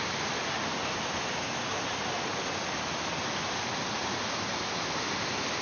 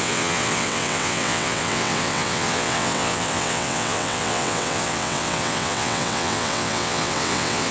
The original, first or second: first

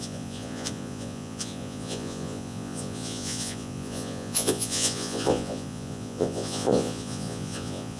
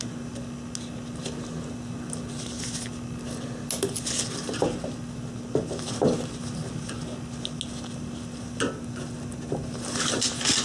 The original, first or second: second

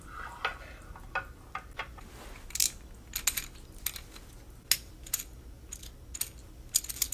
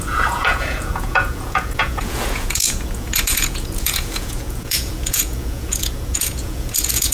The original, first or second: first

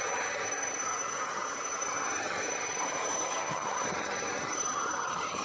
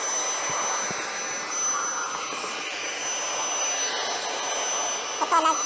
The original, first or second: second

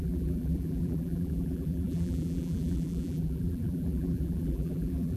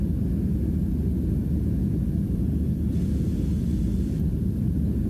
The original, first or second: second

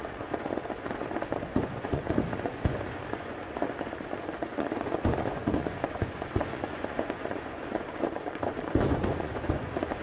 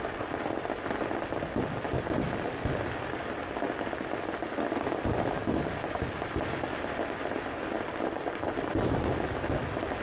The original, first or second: second